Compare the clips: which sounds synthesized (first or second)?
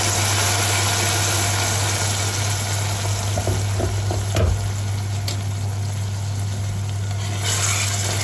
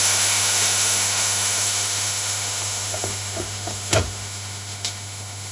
second